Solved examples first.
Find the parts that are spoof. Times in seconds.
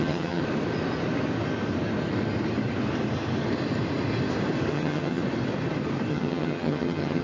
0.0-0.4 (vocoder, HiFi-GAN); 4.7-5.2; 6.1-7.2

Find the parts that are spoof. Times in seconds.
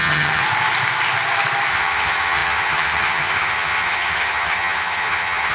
0.0-0.4 (vocoder, HiFi-GAN); 1.7-5.5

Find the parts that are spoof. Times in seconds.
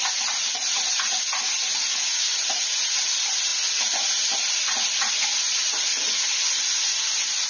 none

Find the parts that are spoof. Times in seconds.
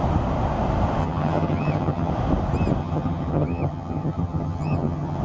1.0-2.1 (vocoder, HiFi-GAN); 2.8-5.2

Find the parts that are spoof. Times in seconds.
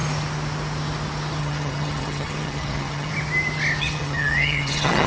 1.4-3.1 (vocoder, HiFi-GAN); 3.8-5.1